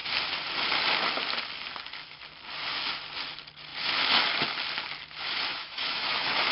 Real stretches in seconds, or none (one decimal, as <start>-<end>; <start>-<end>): 0.0-5.5